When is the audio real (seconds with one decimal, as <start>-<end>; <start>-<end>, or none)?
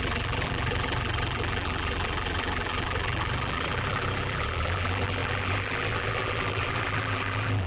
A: none